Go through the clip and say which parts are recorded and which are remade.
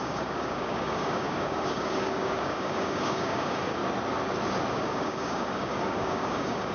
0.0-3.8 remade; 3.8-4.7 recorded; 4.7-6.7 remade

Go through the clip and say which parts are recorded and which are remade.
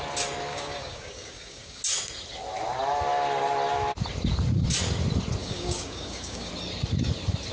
0.0-0.5 recorded; 0.5-1.8 remade; 1.8-5.4 recorded; 5.4-6.5 remade; 6.5-7.5 recorded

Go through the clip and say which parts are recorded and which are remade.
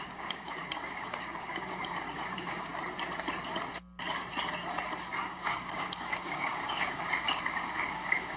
0.0-2.7 remade; 2.7-5.1 recorded; 5.1-8.4 remade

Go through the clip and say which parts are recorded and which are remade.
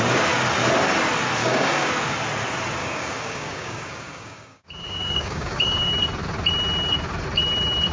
0.0-1.4 recorded; 1.4-1.9 remade; 1.9-2.8 recorded; 2.8-5.9 remade; 5.9-7.9 recorded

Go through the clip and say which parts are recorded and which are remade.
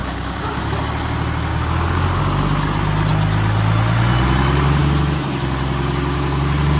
0.0-0.6 remade; 0.6-1.5 recorded; 1.5-2.2 remade; 2.2-6.8 recorded